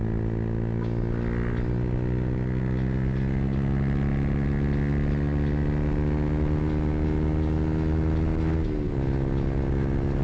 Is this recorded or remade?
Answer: recorded